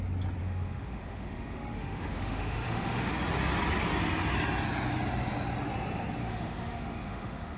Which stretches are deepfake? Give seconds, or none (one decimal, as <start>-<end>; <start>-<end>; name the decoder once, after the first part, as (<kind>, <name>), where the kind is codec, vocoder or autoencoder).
0.4-3.1 (autoencoder, DAC-VAE); 6.2-7.6